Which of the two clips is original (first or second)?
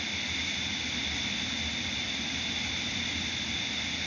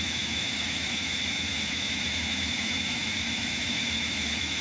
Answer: first